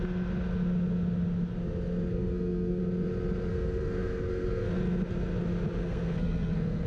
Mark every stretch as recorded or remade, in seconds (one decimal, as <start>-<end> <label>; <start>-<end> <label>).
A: 0.0-2.1 recorded; 2.1-2.8 remade; 2.8-3.5 recorded; 3.5-4.7 remade; 4.7-5.8 recorded; 5.8-6.9 remade